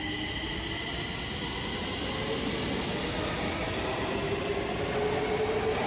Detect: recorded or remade recorded